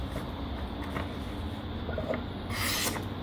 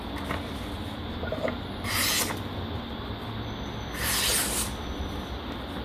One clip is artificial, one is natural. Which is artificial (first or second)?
second